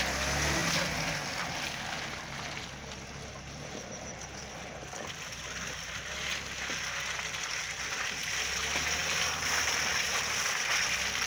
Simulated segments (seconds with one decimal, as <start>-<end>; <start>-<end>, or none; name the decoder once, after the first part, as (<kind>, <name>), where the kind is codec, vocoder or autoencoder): none